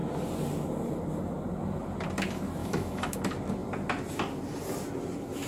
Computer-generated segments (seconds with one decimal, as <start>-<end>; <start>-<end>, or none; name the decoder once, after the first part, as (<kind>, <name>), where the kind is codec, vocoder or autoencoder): 2.6-3.2 (autoencoder, DAC-VAE)